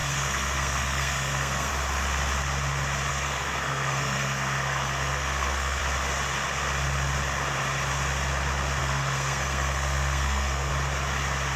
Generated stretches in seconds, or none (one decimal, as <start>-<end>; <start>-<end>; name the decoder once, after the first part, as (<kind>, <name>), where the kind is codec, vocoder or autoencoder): 0.0-1.7 (codec, SNAC); 3.1-5.8; 8.8-10.7